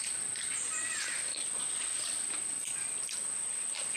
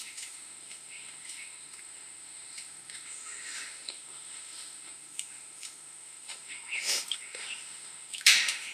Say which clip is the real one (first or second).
first